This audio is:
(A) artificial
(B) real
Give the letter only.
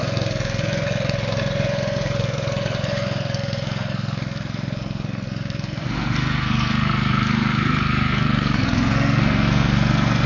A